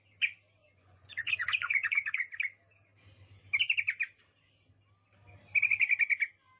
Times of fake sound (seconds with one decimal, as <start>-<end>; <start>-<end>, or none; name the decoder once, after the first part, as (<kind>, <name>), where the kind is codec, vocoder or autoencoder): 0.6-2.3 (vocoder, Vocos)

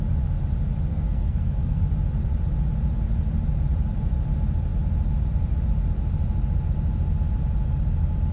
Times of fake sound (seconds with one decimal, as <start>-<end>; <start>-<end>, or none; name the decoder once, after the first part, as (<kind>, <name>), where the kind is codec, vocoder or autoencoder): 0.9-1.8 (codec, SNAC)